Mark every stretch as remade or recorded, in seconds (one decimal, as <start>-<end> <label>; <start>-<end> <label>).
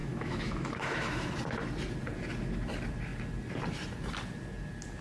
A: 0.0-1.3 remade; 1.3-5.0 recorded